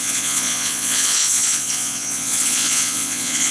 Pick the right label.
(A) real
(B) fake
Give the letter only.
B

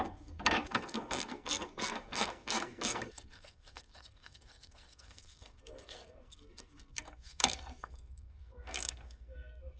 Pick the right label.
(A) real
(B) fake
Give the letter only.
B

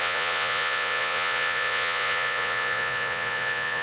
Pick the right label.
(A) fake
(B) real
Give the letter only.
A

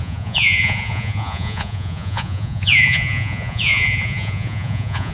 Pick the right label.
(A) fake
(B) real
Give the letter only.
A